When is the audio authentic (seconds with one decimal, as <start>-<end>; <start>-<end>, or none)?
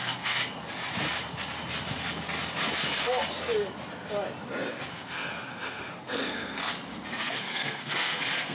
0.4-4.9; 6.6-7.2